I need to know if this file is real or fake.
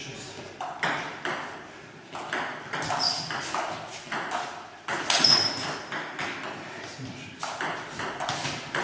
real